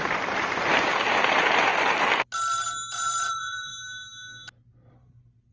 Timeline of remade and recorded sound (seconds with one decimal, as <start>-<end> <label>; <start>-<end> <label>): 0.0-1.7 remade; 1.7-3.2 recorded; 3.2-3.7 remade; 3.7-4.9 recorded; 4.9-5.5 remade